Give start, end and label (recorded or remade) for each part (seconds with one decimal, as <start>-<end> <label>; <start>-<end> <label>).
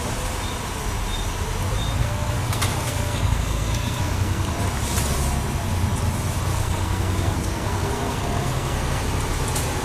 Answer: 0.0-2.0 recorded; 2.0-4.5 remade; 4.5-6.5 recorded; 6.5-9.0 remade; 9.0-9.8 recorded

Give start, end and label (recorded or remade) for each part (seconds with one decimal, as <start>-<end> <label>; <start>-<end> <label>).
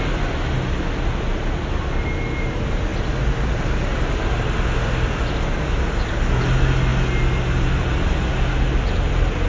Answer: 0.0-9.5 recorded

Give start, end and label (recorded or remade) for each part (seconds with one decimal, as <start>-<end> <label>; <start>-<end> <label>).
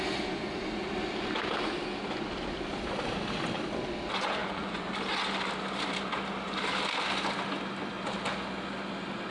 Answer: 0.0-4.4 recorded; 4.4-4.9 remade; 4.9-9.3 recorded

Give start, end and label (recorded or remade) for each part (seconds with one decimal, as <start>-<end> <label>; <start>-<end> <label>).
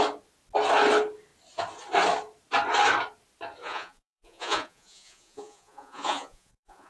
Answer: 0.0-3.6 recorded; 3.6-6.9 remade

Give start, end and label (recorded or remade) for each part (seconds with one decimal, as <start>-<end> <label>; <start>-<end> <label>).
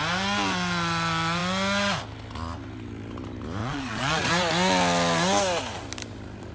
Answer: 0.0-3.6 recorded; 3.6-4.3 remade; 4.3-6.5 recorded